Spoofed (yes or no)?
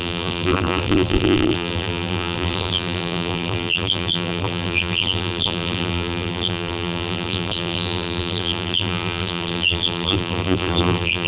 yes